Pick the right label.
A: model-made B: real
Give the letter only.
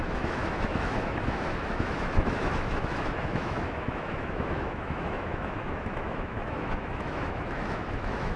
A